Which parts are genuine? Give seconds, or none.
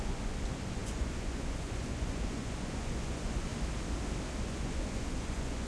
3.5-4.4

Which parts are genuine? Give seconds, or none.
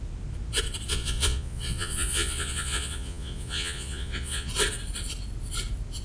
0.0-0.9; 4.5-6.0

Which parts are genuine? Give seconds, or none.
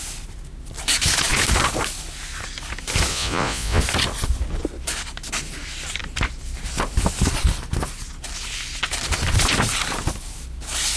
0.0-3.1; 3.8-11.0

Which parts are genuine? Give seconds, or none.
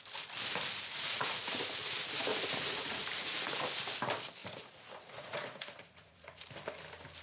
0.0-0.9; 1.6-2.3; 3.5-4.4; 6.4-7.2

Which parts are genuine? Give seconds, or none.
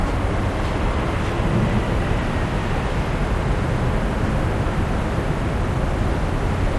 0.0-6.8